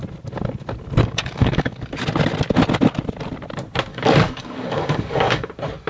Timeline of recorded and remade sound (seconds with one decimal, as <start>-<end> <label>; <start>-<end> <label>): 0.0-1.0 recorded; 1.0-2.0 remade; 2.0-3.9 recorded; 3.9-5.5 remade; 5.5-5.9 recorded